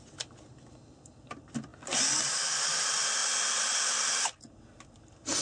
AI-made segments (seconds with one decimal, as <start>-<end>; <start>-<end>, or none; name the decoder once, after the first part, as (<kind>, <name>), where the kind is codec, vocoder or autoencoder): none